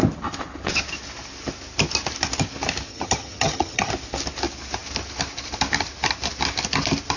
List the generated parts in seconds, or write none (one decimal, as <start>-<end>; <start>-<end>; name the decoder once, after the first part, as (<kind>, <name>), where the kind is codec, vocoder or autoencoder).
2.9-3.9 (vocoder, HiFi-GAN)